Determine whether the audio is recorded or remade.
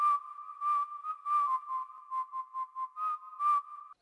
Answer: recorded